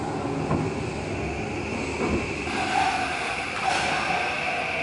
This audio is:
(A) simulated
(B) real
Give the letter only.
B